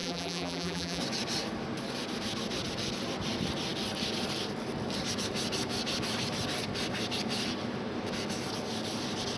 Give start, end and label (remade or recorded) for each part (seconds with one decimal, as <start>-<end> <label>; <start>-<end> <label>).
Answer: 0.0-1.0 remade; 1.0-9.4 recorded